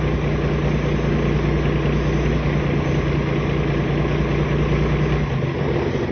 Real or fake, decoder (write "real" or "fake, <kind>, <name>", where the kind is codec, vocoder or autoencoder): real